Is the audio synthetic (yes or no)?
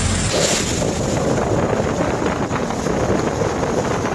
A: no